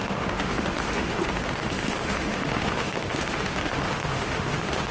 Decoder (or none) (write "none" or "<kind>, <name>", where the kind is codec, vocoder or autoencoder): autoencoder, DAC-VAE